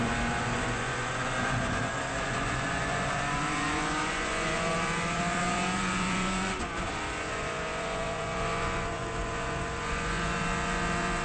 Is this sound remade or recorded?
remade